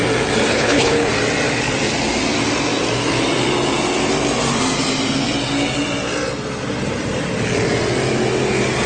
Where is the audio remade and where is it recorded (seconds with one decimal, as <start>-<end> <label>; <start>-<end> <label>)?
0.0-0.5 recorded; 0.5-1.1 remade; 1.1-8.9 recorded